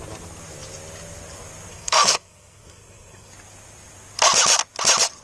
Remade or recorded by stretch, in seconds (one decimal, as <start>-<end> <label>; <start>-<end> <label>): 0.0-1.7 recorded; 1.7-3.3 remade; 3.3-5.2 recorded